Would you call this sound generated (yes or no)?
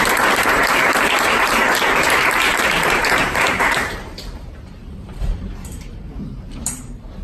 yes